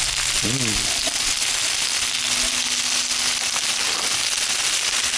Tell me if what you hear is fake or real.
real